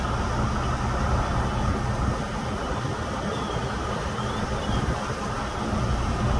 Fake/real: real